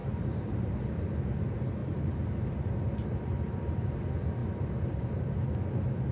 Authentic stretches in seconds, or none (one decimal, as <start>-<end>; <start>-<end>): 1.0-1.8; 2.3-4.4; 5.2-6.1